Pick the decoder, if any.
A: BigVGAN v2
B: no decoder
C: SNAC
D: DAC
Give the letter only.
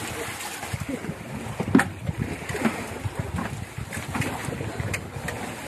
B